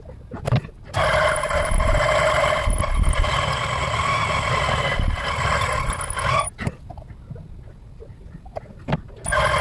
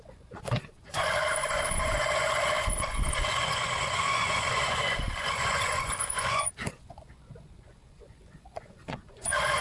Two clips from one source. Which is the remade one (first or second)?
second